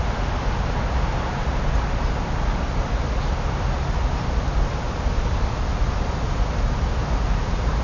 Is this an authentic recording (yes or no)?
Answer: yes